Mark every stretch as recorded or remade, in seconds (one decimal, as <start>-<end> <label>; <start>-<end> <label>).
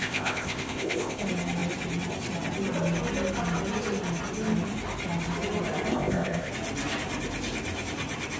0.0-1.2 remade; 1.2-5.9 recorded; 5.9-6.5 remade; 6.5-8.4 recorded